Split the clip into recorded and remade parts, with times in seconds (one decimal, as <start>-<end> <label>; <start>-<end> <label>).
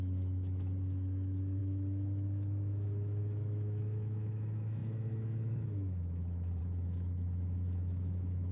0.0-8.5 remade